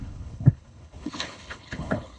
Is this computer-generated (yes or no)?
yes